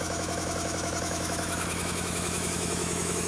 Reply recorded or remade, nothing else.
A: remade